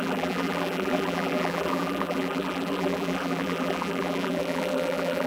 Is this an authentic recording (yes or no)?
no